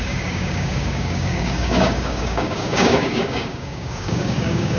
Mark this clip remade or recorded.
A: remade